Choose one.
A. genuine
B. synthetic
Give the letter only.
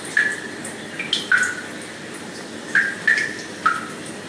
A